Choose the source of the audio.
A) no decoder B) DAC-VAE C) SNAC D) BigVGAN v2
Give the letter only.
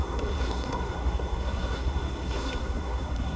C